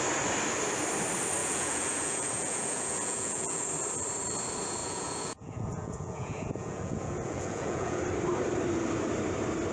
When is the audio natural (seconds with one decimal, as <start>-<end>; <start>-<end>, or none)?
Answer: 0.0-1.4; 3.7-4.8; 8.0-9.7